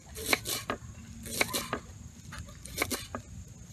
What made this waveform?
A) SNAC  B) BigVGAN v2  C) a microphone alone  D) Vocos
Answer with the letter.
C